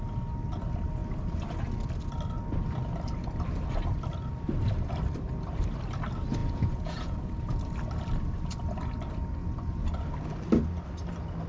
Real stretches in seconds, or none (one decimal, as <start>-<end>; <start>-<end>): 0.0-6.4; 7.3-11.5